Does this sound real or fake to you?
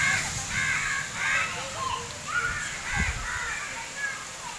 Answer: real